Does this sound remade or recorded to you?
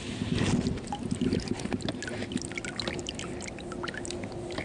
recorded